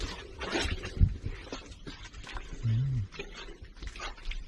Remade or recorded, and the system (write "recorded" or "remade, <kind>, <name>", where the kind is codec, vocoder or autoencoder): recorded